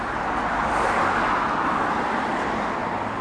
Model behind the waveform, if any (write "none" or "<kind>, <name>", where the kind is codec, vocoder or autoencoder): none